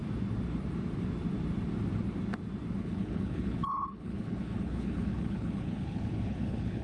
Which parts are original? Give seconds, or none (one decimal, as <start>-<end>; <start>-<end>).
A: 0.0-2.8